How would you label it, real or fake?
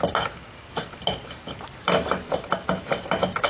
real